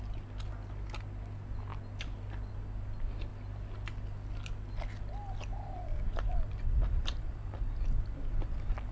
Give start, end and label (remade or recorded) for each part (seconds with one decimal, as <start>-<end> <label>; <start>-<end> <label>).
0.0-5.5 recorded; 5.5-7.7 remade; 7.7-8.9 recorded